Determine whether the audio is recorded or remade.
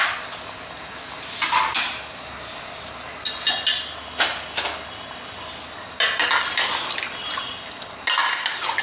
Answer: recorded